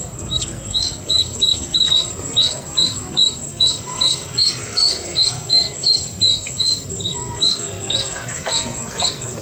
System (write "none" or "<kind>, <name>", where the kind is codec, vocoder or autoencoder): codec, SNAC